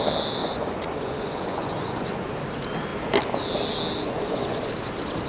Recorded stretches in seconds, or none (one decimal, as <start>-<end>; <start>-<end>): 0.0-0.4; 2.3-4.0; 4.7-5.3